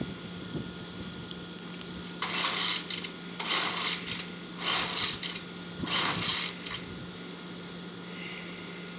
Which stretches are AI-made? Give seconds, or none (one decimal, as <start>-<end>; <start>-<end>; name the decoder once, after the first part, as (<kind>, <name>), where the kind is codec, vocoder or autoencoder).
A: none

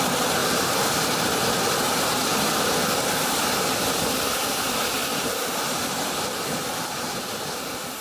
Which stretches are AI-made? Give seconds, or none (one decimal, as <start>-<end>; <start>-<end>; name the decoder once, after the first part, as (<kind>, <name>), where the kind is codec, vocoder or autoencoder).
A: 0.0-0.4 (vocoder, BigVGAN v2); 1.8-2.3; 7.1-8.0

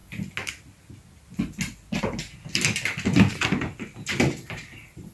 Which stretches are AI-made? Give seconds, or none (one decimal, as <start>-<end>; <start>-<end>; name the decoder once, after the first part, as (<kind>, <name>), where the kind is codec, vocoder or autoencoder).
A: none

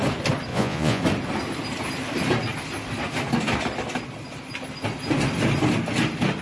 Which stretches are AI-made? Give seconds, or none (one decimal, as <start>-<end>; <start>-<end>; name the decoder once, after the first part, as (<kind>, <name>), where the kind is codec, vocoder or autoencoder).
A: 0.5-1.0 (vocoder, Vocos)

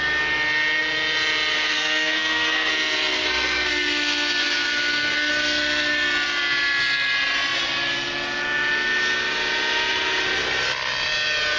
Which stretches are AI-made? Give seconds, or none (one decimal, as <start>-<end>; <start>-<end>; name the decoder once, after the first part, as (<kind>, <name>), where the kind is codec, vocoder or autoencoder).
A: 1.5-2.7 (codec, SNAC); 3.1-5.3

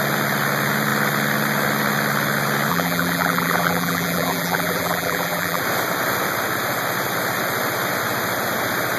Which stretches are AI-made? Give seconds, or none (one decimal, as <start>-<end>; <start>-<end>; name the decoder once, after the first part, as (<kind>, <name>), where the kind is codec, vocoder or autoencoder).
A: 2.7-5.6 (vocoder, BigVGAN v2)

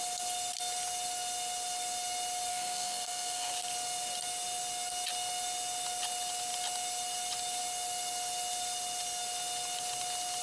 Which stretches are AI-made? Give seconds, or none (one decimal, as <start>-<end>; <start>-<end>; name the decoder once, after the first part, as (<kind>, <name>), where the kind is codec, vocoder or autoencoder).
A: 2.5-3.5 (codec, SNAC)

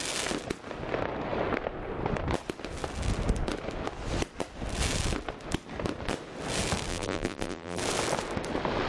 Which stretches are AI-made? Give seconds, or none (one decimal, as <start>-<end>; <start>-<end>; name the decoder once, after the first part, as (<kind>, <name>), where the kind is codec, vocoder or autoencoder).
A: 6.9-7.8 (vocoder, BigVGAN v2)